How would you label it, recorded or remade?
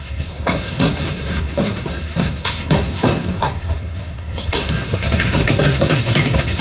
remade